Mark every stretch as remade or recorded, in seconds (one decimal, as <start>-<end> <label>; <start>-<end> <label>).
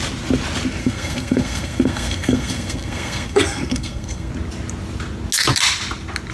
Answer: 0.0-0.8 recorded; 0.8-4.3 remade; 4.3-6.3 recorded